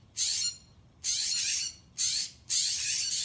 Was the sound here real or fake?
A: real